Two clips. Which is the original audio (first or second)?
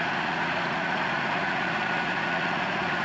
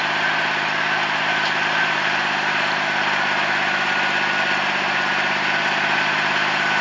second